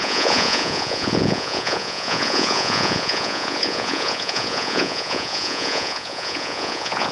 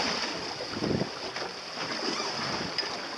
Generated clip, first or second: first